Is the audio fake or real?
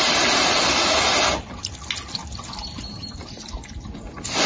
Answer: real